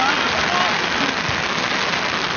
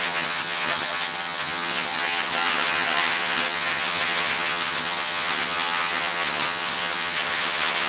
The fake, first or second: second